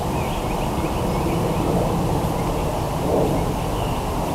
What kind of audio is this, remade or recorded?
recorded